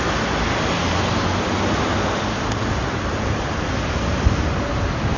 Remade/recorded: recorded